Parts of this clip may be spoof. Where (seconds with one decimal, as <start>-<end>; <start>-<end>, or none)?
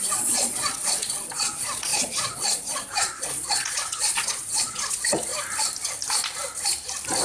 0.0-5.3